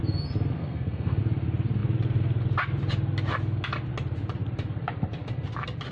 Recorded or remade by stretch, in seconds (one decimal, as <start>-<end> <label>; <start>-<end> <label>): 0.0-0.6 recorded; 0.6-1.2 remade; 1.2-5.9 recorded